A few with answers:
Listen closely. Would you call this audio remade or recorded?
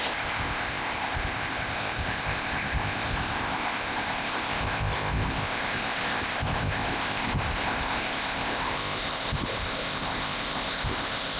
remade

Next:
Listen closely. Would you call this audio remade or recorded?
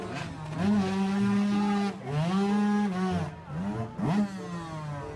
recorded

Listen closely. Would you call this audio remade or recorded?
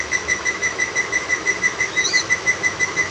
remade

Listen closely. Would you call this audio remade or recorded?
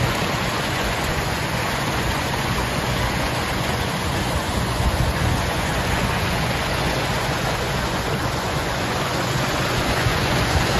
remade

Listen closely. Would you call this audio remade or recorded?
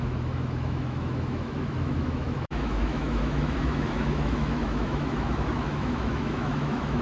remade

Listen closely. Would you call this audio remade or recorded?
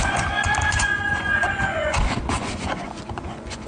remade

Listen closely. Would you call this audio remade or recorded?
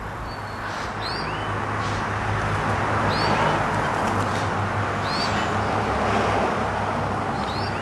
recorded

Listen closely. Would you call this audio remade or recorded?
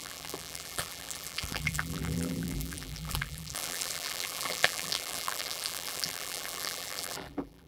remade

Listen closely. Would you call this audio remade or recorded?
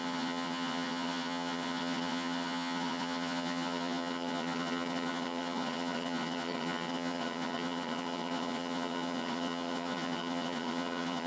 remade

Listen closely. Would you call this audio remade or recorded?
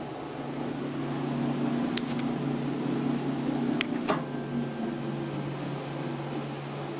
recorded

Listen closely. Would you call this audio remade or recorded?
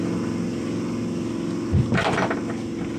recorded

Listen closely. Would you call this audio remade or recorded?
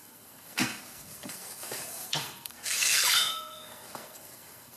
remade